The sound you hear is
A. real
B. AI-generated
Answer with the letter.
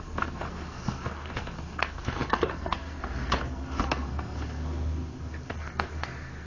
B